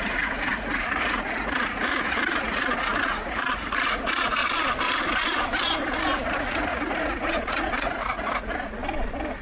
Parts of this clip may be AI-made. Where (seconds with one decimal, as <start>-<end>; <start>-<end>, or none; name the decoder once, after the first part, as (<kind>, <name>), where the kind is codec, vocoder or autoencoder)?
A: 0.0-4.4 (vocoder, Vocos); 6.4-8.8